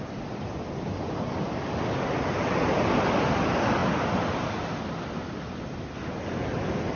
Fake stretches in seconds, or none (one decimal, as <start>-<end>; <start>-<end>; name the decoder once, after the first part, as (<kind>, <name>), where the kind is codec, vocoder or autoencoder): none